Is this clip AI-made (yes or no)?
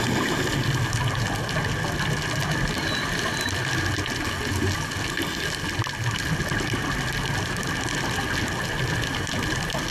no